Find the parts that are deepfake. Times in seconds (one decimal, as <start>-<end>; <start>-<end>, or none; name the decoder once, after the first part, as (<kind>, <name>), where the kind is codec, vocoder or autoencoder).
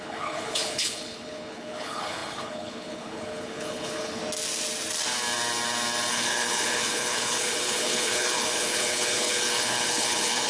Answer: 0.0-4.2 (codec, HILCodec); 6.1-10.5